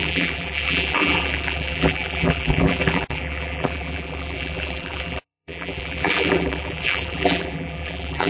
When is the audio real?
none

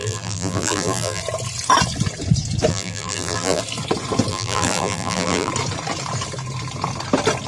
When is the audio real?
1.2-2.7; 3.6-4.3; 5.5-7.5

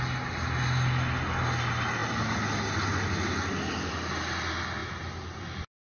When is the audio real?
0.0-5.8